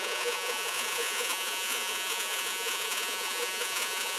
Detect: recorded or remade remade